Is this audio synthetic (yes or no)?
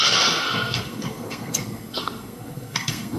yes